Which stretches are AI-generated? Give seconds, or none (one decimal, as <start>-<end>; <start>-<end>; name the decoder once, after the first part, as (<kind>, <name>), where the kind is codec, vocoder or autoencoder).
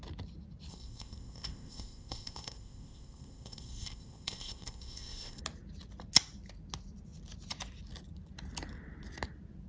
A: 0.7-5.4 (codec, ZipCodec)